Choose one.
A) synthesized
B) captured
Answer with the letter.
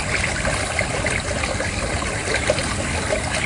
B